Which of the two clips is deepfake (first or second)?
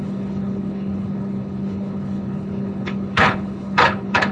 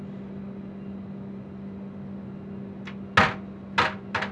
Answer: first